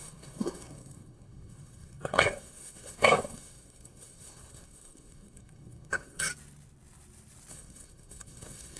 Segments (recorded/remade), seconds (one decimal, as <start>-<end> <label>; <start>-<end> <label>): 0.0-6.3 remade; 6.3-7.5 recorded; 7.5-8.8 remade